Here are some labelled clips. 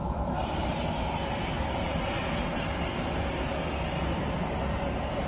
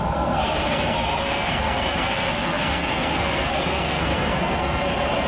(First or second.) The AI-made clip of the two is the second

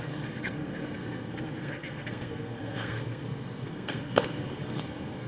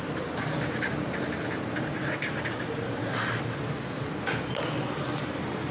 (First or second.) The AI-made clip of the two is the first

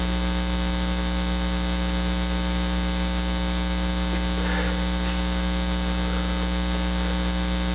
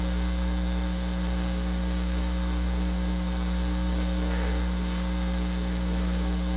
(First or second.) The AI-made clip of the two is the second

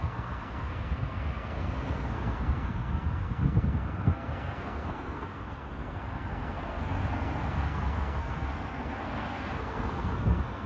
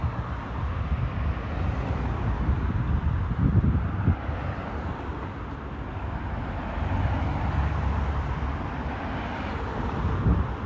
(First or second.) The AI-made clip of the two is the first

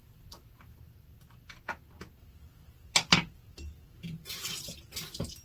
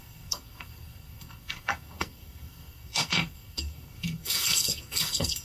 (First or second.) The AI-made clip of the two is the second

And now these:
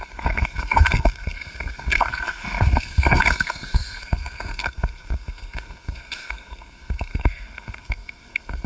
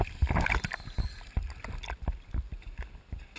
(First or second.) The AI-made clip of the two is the first